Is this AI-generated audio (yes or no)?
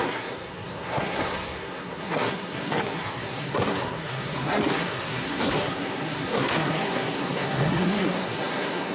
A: yes